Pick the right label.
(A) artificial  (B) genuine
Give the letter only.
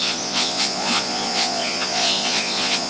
A